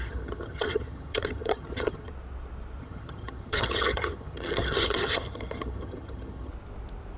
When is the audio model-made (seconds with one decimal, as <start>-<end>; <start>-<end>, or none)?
0.0-2.1; 2.8-6.5